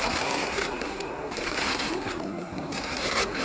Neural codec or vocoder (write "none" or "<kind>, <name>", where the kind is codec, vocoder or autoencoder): codec, SNAC